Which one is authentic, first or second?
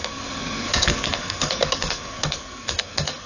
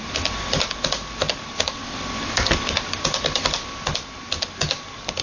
second